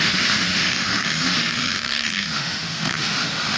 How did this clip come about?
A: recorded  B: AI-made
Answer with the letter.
B